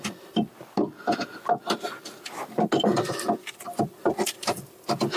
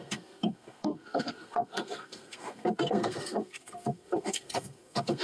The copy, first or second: second